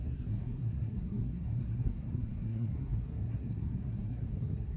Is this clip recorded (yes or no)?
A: no